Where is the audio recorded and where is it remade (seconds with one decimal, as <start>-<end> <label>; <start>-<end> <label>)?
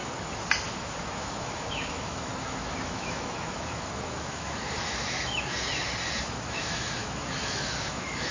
0.0-1.0 recorded; 1.0-5.5 remade; 5.5-6.2 recorded; 6.2-8.3 remade